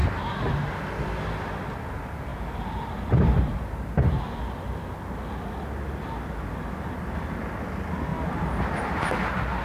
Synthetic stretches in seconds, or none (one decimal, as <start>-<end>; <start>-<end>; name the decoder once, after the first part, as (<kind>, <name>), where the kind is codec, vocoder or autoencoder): 0.0-0.7 (vocoder, BigVGAN v2); 2.3-4.2; 8.1-9.2